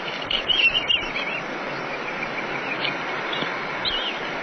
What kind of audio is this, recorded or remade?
recorded